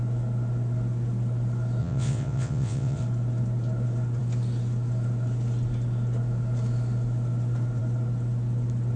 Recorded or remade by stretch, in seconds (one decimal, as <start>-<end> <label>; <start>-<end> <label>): 0.0-1.8 recorded; 1.8-3.0 remade; 3.0-9.0 recorded